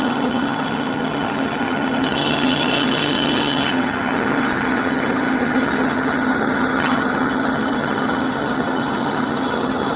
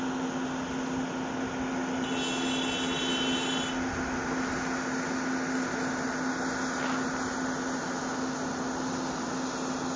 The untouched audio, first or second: second